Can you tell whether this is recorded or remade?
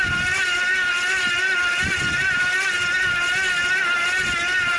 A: recorded